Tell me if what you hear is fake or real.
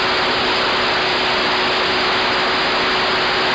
real